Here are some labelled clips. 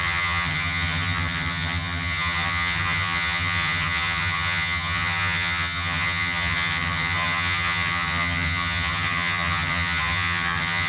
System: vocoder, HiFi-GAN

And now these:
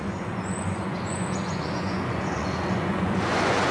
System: vocoder, Vocos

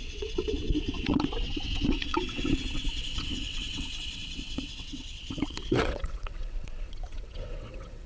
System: vocoder, WaveNeXt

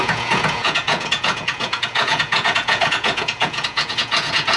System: vocoder, Vocos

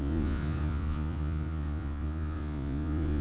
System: vocoder, Vocos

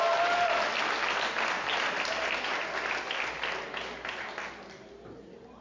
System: none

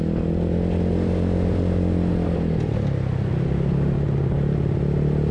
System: none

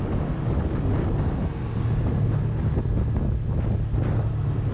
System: none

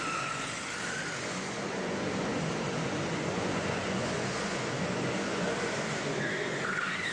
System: vocoder, Vocos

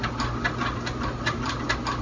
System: none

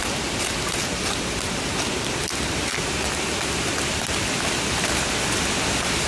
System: none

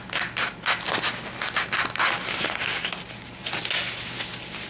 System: none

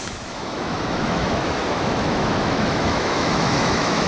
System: autoencoder, DAC-VAE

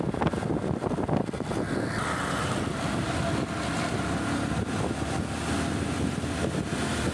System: none